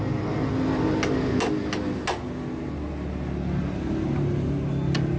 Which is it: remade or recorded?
recorded